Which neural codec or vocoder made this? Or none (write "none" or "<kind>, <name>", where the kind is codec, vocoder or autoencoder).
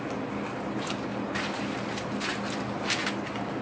none